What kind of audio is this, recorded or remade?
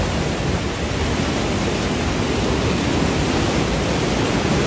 recorded